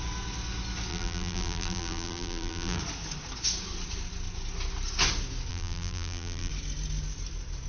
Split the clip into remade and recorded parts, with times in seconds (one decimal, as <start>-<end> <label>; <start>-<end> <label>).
0.0-0.9 recorded; 0.9-2.8 remade; 2.8-5.5 recorded; 5.5-6.5 remade; 6.5-7.7 recorded